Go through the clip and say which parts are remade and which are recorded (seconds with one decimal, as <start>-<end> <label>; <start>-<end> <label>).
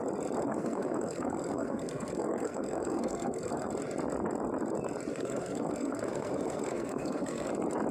0.0-0.4 recorded; 0.4-3.7 remade; 3.7-5.1 recorded; 5.1-7.5 remade; 7.5-7.9 recorded